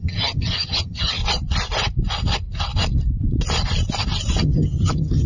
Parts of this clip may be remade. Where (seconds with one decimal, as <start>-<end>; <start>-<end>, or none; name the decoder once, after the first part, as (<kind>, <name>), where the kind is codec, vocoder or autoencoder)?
0.0-1.2 (vocoder, HiFi-GAN); 4.4-5.3